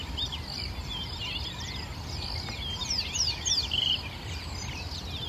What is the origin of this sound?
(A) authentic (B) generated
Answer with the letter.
B